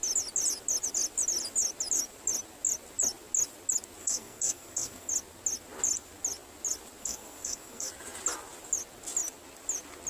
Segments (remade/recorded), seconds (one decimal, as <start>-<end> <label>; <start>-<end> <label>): 0.0-4.0 recorded; 4.0-5.1 remade; 5.1-7.0 recorded; 7.0-7.9 remade; 7.9-10.1 recorded